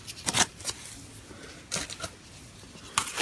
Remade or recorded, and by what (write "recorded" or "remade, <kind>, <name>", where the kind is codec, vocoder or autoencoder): recorded